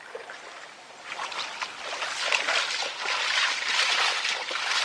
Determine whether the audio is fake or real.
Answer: real